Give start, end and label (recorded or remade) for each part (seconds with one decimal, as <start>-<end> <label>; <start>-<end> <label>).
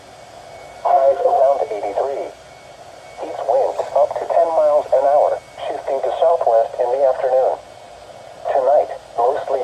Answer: 0.0-0.9 recorded; 0.9-1.4 remade; 1.4-9.6 recorded